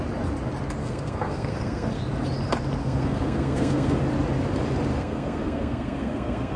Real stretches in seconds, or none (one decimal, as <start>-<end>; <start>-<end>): 0.0-0.8; 2.0-2.8; 4.0-4.9